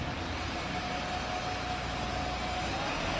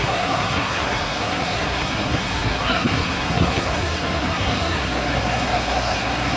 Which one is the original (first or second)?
first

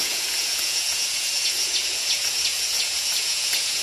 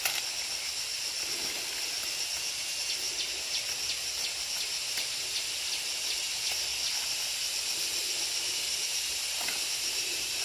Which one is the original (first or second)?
second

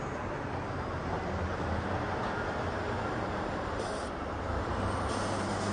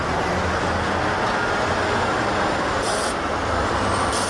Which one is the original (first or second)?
second